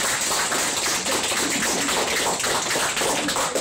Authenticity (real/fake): real